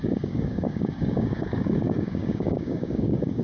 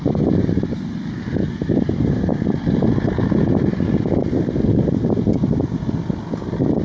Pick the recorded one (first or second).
second